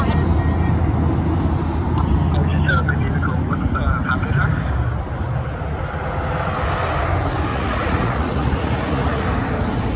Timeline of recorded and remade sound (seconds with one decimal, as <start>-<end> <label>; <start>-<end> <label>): 0.0-7.5 recorded; 7.5-9.2 remade; 9.2-10.0 recorded